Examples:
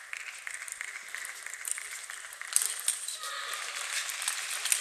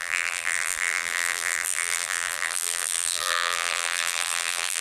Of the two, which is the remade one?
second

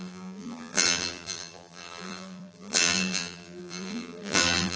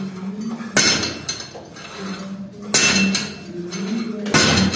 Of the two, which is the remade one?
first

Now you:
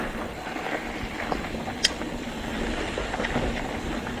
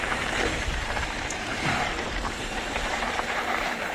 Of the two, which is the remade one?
second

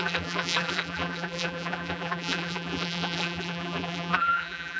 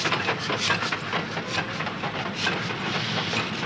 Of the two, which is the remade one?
first